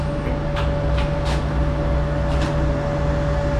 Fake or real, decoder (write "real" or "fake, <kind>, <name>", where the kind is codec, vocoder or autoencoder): real